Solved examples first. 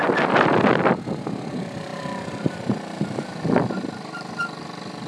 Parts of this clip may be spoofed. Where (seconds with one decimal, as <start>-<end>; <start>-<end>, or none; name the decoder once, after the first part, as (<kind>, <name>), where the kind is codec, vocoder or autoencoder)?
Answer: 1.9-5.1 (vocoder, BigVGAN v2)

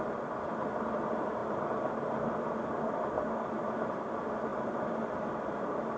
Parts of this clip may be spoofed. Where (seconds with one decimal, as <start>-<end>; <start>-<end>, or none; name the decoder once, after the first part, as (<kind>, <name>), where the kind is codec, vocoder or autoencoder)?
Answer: none

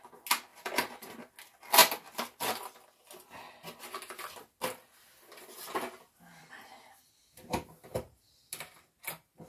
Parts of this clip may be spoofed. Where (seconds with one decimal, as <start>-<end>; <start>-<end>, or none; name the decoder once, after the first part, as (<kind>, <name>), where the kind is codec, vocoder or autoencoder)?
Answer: 0.5-1.2 (vocoder, BigVGAN v2); 7.9-8.4

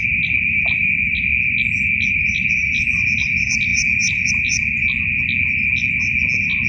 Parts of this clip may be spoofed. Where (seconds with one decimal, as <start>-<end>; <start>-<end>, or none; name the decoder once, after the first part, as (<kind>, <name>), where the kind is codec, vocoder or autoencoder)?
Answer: 0.0-1.3 (vocoder, BigVGAN v2); 2.1-4.8

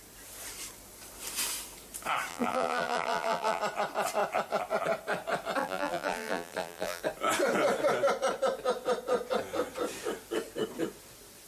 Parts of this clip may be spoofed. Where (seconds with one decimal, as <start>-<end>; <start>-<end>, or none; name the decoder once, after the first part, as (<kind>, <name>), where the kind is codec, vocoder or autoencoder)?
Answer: 2.3-3.6 (vocoder, BigVGAN v2); 5.6-7.0

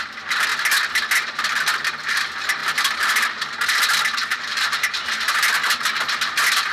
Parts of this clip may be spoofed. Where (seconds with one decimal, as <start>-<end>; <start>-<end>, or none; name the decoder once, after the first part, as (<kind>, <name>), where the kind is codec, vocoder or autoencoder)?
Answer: 4.3-5.1 (vocoder, BigVGAN v2)